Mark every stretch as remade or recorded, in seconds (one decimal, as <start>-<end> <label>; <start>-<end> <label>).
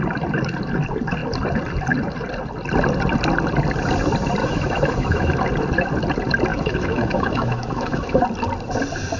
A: 0.0-4.4 recorded; 4.4-5.4 remade; 5.4-6.5 recorded; 6.5-8.2 remade; 8.2-9.2 recorded